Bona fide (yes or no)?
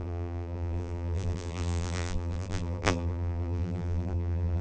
no